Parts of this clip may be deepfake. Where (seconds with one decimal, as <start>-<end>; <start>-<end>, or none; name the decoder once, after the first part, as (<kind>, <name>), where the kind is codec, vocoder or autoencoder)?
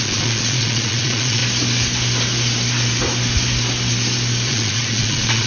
0.0-1.4 (vocoder, Vocos); 4.5-5.5